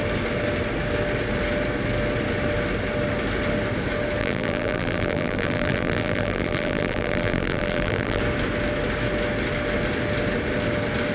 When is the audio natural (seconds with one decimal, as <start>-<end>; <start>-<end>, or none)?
0.0-4.2; 8.2-11.1